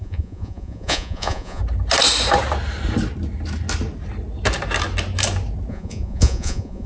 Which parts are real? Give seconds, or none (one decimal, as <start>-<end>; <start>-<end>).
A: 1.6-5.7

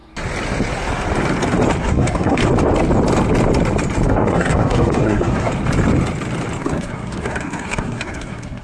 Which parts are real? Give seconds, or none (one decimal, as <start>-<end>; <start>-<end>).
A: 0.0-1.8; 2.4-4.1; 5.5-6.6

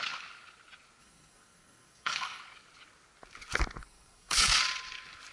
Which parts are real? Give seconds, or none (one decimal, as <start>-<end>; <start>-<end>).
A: 0.0-1.0; 2.4-3.8; 4.6-5.3

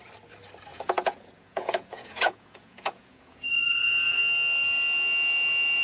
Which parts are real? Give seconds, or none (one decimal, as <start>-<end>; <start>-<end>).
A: 0.0-0.7; 4.2-5.8